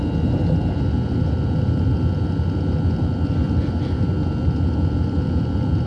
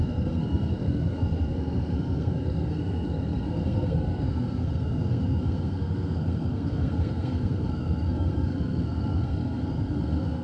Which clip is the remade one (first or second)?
second